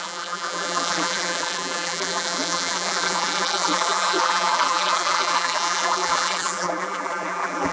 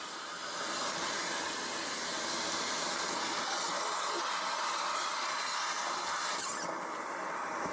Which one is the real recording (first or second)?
second